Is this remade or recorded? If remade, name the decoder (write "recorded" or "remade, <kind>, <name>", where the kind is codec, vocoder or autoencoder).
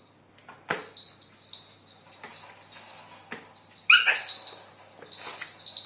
recorded